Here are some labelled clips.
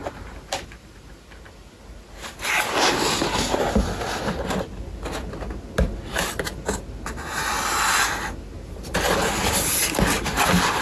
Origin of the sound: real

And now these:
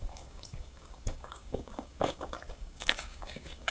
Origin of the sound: fake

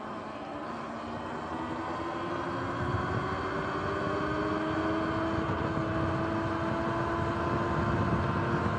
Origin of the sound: real